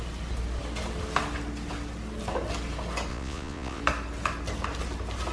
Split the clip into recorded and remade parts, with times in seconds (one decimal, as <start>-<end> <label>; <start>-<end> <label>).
0.0-3.1 recorded; 3.1-3.8 remade; 3.8-5.3 recorded